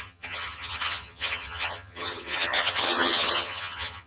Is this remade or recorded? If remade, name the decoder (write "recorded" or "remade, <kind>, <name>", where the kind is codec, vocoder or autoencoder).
remade, vocoder, HiFi-GAN